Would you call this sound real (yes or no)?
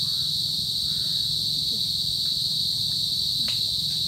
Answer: yes